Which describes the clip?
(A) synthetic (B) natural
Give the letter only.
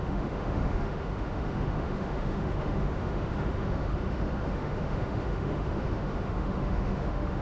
A